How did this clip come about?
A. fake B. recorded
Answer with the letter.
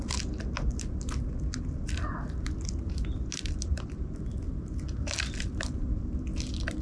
B